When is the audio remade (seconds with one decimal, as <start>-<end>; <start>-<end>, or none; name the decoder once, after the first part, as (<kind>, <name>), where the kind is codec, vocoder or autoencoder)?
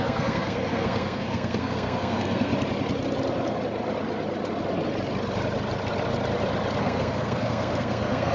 0.0-2.5 (codec, SNAC); 6.8-8.3